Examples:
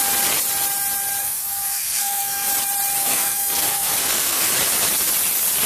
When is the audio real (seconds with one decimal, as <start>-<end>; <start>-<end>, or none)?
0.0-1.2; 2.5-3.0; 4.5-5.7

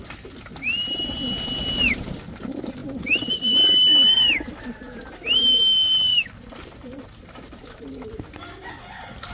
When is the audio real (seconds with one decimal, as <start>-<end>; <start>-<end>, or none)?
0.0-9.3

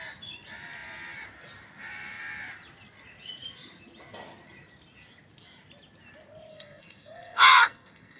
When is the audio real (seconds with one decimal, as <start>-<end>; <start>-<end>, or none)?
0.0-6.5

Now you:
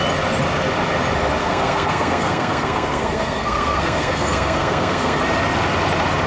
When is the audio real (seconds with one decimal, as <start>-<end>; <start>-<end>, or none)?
0.0-1.4; 5.2-6.3

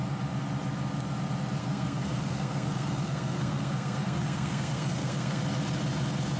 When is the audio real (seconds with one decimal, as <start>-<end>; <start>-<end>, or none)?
0.0-1.6; 5.4-6.4

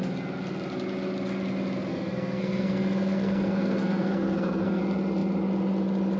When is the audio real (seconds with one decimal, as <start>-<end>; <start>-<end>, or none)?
0.0-1.9; 4.8-6.2

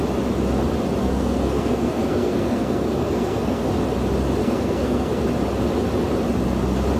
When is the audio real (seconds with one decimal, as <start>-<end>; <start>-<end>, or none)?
0.0-1.0; 3.7-4.4; 5.2-7.0

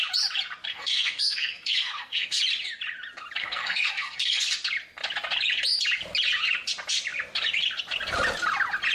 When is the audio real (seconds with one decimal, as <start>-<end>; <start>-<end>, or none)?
0.0-0.7; 2.4-3.4; 4.4-8.9